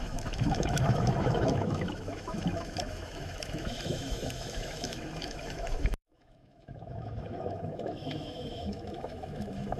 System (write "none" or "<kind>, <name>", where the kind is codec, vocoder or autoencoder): autoencoder, DAC-VAE